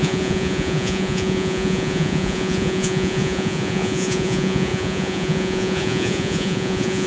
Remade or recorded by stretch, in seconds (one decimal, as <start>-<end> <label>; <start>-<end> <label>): 0.0-7.1 remade